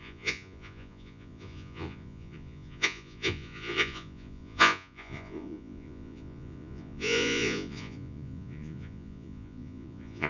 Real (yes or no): no